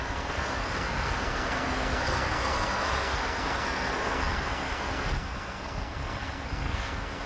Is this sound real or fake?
fake